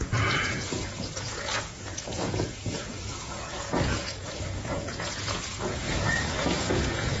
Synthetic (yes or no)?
yes